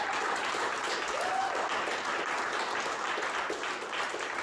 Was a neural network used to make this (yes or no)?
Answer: no